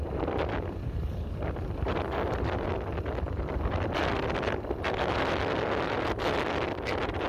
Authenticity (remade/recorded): remade